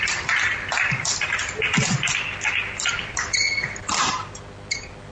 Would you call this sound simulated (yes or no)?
no